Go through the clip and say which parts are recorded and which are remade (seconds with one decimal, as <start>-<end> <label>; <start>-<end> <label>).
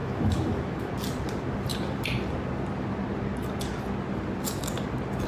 0.0-0.9 remade; 0.9-5.3 recorded